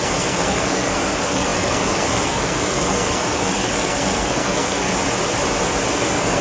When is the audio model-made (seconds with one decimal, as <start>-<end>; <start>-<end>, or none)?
0.0-4.9; 5.9-6.4